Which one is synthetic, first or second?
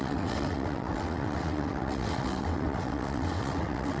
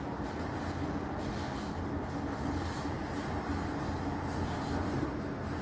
first